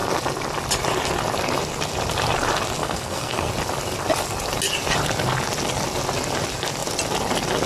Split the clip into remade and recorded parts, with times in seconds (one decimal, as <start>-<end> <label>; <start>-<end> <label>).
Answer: 0.0-2.8 recorded; 2.8-3.5 remade; 3.5-7.7 recorded